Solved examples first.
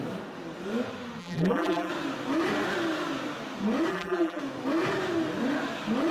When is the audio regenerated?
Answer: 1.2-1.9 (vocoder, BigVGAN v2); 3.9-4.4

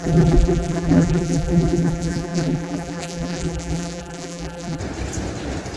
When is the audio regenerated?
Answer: 0.0-4.8 (vocoder, BigVGAN v2)

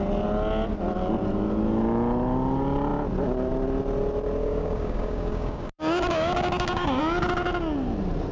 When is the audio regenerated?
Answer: 4.4-7.0 (codec, DAC)

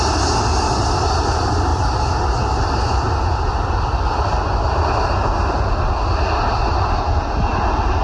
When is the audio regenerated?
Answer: none

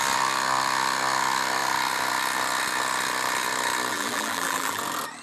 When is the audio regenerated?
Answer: 3.9-4.8 (vocoder, BigVGAN v2)

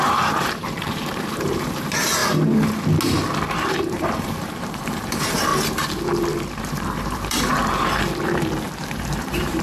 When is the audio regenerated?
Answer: 0.0-2.2 (vocoder, BigVGAN v2); 3.7-5.5; 6.6-7.5; 8.8-9.6

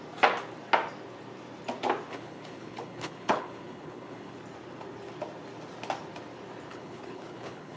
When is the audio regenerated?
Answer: 2.1-4.4 (codec, HILCodec); 6.7-7.8